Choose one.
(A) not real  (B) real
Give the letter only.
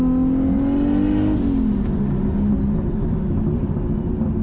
B